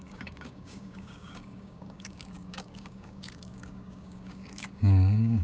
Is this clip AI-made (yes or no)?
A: yes